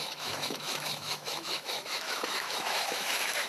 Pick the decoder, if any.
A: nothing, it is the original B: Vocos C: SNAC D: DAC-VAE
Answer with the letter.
D